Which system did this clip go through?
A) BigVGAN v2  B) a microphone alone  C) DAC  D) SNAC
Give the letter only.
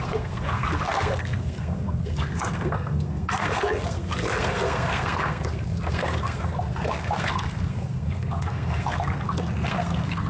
D